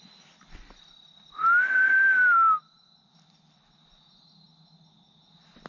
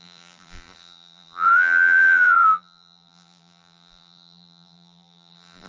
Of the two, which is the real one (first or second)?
first